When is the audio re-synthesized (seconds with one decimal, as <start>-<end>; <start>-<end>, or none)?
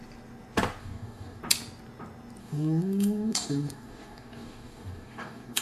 0.8-1.4; 2.4-5.6